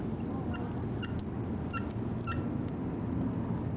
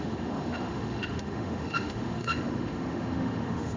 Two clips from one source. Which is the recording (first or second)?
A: first